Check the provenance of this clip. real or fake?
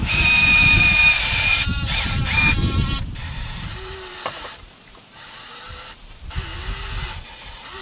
fake